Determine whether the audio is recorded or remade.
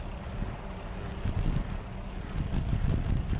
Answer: recorded